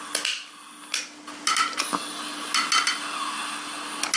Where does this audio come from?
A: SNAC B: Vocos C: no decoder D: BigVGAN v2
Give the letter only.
C